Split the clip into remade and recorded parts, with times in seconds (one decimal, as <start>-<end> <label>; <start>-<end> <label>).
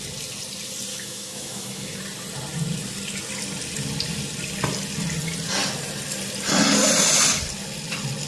0.0-0.9 recorded; 0.9-2.0 remade; 2.0-8.3 recorded